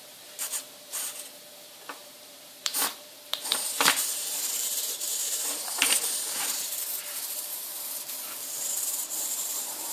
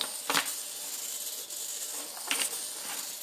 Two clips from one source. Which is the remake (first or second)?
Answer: first